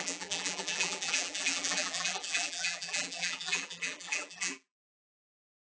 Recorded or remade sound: remade